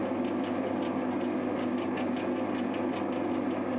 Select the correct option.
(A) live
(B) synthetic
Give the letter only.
A